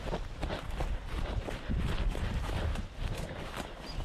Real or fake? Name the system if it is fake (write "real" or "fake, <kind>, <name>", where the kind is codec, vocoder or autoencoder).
real